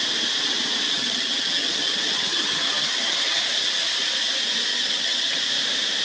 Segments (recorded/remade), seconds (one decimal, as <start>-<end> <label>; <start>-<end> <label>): 0.0-0.9 recorded; 0.9-3.4 remade; 3.4-4.7 recorded; 4.7-5.4 remade; 5.4-6.0 recorded